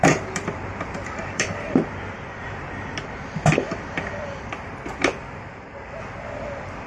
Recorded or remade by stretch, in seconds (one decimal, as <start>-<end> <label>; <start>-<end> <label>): 0.0-5.1 remade; 5.1-6.0 recorded; 6.0-6.9 remade